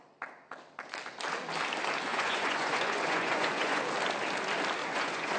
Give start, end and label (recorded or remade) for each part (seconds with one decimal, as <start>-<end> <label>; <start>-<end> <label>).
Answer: 0.0-2.1 recorded; 2.1-3.8 remade; 3.8-4.8 recorded; 4.8-5.4 remade